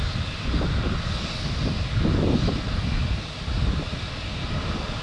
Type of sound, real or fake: real